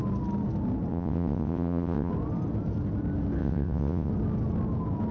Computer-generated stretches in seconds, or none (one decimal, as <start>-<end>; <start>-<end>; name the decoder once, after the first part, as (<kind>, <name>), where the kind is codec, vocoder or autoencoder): 0.9-2.1 (vocoder, WaveNeXt); 3.4-4.1